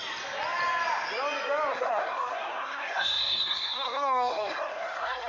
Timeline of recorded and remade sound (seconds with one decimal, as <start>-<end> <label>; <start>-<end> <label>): 0.0-1.7 recorded; 1.7-5.3 remade